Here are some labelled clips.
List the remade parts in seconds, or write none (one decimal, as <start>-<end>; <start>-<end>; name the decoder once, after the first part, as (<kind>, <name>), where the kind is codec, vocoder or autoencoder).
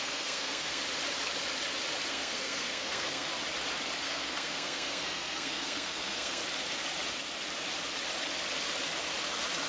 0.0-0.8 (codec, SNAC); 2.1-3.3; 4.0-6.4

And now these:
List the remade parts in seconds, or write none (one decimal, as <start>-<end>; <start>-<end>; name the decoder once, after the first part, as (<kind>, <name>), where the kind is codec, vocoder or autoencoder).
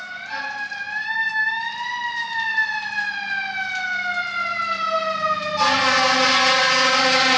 1.0-1.7 (autoencoder, DAC-VAE)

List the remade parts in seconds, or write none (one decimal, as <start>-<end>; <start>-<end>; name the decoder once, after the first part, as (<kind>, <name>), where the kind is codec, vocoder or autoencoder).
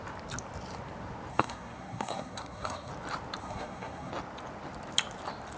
1.3-2.9 (codec, SNAC); 3.4-4.1